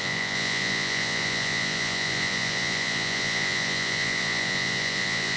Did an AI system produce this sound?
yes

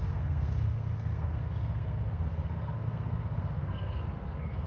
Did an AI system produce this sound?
yes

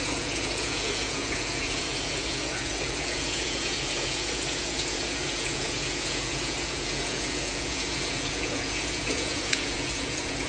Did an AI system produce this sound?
yes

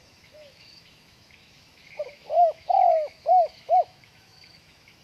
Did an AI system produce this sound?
yes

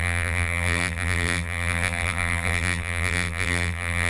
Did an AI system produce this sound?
yes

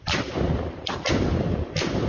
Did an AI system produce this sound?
yes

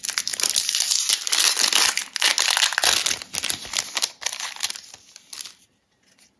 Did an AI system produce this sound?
no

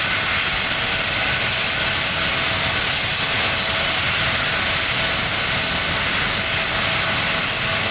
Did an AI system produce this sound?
no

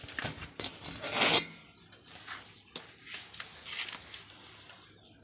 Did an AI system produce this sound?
no